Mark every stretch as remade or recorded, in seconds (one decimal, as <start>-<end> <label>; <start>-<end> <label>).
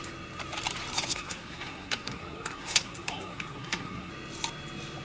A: 0.0-1.1 recorded; 1.1-4.1 remade; 4.1-5.0 recorded